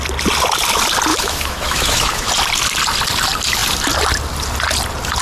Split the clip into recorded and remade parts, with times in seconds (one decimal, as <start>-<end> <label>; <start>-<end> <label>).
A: 0.0-1.1 recorded; 1.1-2.3 remade; 2.3-5.2 recorded